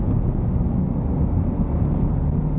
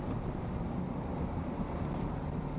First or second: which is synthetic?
second